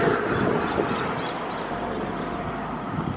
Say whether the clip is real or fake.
real